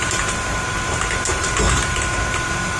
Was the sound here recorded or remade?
remade